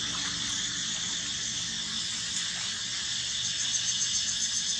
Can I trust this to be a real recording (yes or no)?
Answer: yes